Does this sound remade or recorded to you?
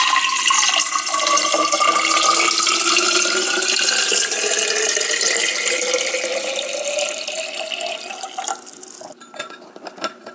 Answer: recorded